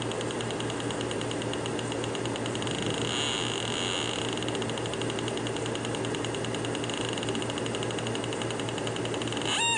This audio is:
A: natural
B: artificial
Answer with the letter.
A